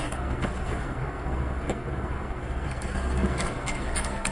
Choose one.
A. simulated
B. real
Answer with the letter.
A